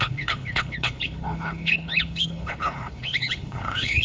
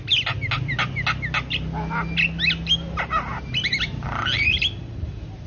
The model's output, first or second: first